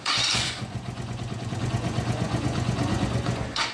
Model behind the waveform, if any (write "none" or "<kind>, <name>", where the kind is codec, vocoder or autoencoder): vocoder, Vocos